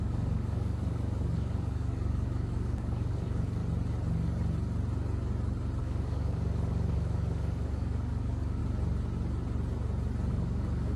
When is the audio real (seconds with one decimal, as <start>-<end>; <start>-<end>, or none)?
3.6-5.8; 8.6-10.3